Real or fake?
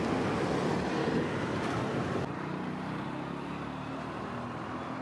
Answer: real